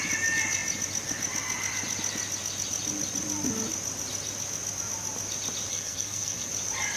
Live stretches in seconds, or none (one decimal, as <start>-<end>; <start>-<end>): 0.0-5.7; 6.5-7.0